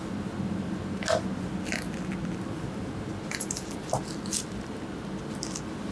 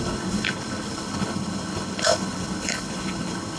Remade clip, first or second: second